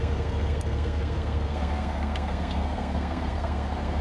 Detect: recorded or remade remade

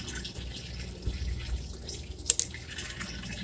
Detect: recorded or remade recorded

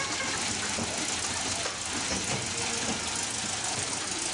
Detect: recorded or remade recorded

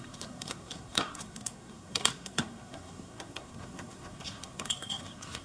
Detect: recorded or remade remade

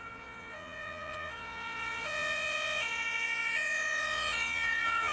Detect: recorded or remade remade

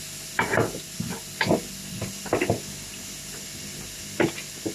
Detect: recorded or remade recorded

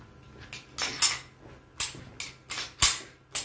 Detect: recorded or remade recorded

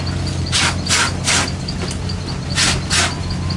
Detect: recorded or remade recorded